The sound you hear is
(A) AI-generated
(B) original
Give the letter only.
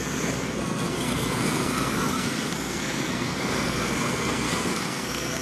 A